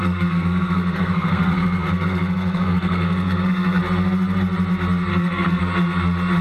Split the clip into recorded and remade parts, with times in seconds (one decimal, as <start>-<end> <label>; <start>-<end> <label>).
0.0-3.8 remade; 3.8-5.1 recorded; 5.1-5.6 remade; 5.6-6.4 recorded